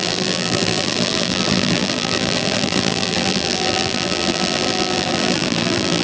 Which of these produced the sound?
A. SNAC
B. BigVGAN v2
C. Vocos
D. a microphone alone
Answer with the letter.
B